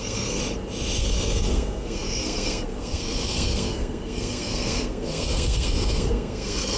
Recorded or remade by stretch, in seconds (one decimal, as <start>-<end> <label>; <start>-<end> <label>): 0.0-0.4 remade; 0.4-1.0 recorded; 1.0-6.8 remade